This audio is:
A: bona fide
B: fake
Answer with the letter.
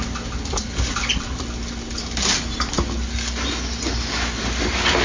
A